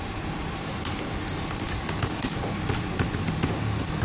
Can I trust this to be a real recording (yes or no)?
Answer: yes